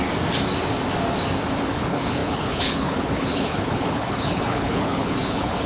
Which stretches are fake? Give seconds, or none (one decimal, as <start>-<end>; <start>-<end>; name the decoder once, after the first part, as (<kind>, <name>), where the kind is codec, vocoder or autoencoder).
1.6-5.7 (codec, HILCodec)